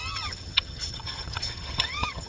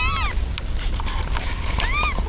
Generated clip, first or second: first